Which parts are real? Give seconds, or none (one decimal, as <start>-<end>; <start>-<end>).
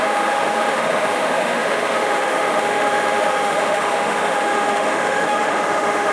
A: none